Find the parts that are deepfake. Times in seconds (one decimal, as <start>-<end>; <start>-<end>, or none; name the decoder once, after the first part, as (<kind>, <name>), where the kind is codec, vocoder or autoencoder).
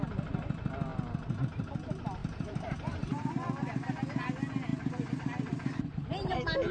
2.2-3.3 (vocoder, BigVGAN v2); 4.7-6.7